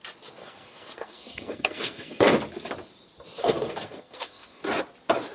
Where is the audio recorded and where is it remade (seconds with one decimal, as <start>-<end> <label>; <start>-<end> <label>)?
0.0-0.4 recorded; 0.4-2.3 remade; 2.3-3.4 recorded; 3.4-4.6 remade; 4.6-5.3 recorded